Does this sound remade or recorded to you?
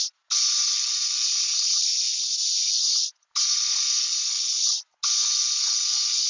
recorded